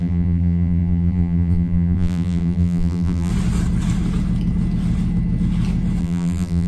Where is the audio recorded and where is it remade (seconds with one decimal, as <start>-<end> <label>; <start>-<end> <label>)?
0.0-3.3 remade; 3.3-6.0 recorded; 6.0-6.7 remade